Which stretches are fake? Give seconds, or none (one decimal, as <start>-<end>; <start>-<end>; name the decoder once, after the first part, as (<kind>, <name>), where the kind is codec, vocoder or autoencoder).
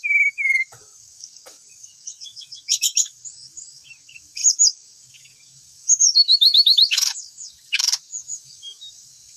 0.0-9.4 (codec, DAC)